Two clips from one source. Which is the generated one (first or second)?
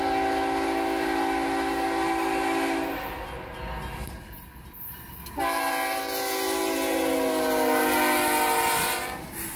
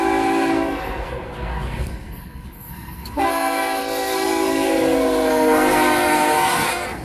second